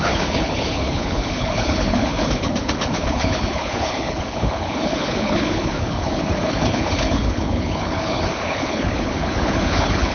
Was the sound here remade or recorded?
remade